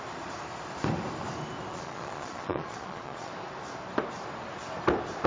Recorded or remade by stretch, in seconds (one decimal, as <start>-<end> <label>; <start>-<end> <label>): 0.0-1.7 recorded; 1.7-3.3 remade; 3.3-5.3 recorded